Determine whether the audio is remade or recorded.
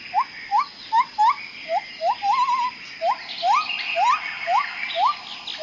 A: recorded